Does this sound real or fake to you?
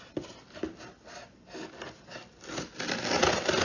real